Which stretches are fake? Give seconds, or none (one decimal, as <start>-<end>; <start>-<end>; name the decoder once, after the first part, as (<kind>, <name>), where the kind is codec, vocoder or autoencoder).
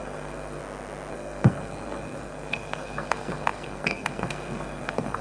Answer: 0.0-0.6 (codec, SNAC); 1.1-5.2